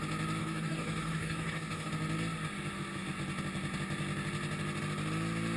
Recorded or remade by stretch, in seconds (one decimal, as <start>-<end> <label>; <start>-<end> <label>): 0.0-0.4 recorded; 0.4-1.9 remade; 1.9-5.6 recorded